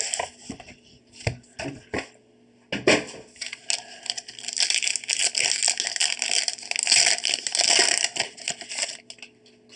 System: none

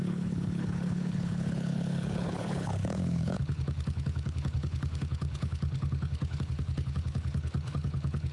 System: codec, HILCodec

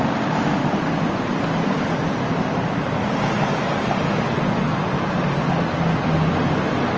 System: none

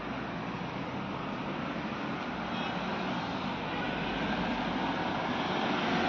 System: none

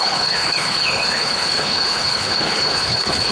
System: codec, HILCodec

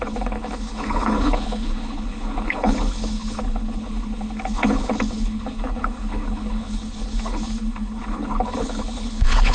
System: codec, HILCodec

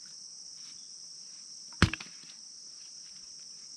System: none